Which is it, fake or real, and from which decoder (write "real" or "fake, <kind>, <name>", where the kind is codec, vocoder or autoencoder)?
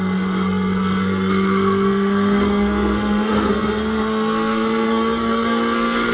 fake, codec, SNAC